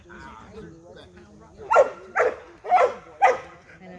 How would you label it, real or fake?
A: real